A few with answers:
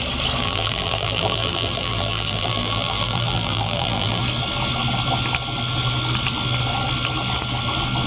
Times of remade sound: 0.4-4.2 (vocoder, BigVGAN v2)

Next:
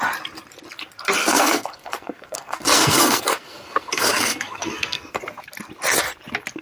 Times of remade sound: 1.2-5.2 (codec, SNAC)

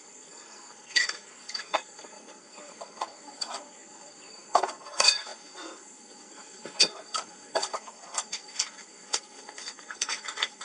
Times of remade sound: 0.0-10.6 (codec, SNAC)

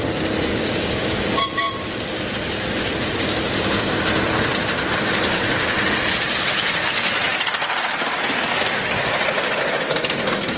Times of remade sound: 0.5-1.2 (codec, DAC)

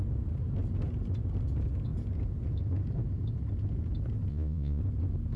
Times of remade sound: 4.3-4.8 (vocoder, Vocos)

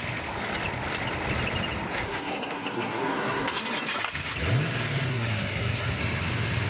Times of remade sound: 1.9-3.6 (codec, SNAC); 5.1-6.0

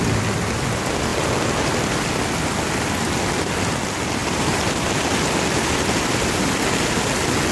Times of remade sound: 4.2-4.9 (vocoder, BigVGAN v2)

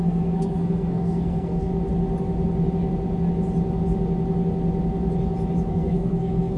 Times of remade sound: 0.0-1.7 (codec, SNAC); 5.7-6.6